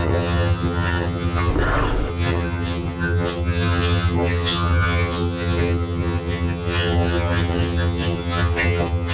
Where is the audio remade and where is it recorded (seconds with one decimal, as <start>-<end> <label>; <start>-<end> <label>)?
0.0-1.5 remade; 1.5-2.1 recorded; 2.1-9.1 remade